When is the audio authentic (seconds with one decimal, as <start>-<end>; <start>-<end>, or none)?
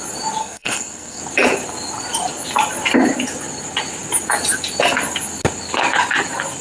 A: 0.0-0.4; 1.2-6.6